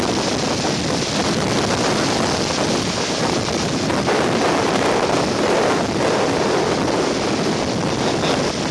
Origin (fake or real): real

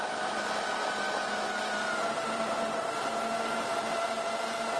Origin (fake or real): real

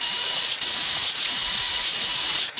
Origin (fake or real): fake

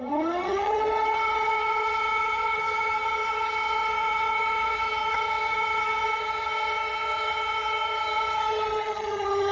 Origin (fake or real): fake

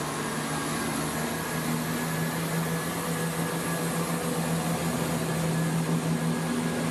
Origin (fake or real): real